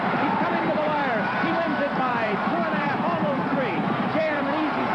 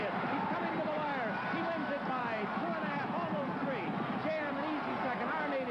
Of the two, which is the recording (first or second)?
second